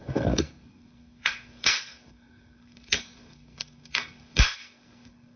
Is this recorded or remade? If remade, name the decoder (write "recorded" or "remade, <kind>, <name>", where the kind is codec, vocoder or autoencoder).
remade, codec, SNAC